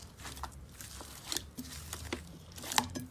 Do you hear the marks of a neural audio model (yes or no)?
yes